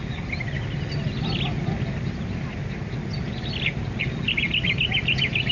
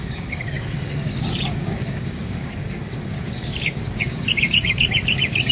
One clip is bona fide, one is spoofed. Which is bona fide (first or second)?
first